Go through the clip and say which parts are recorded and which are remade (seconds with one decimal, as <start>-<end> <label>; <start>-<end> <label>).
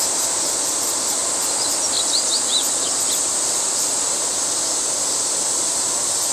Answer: 0.0-1.2 remade; 1.2-1.9 recorded; 1.9-2.5 remade; 2.5-3.7 recorded; 3.7-6.3 remade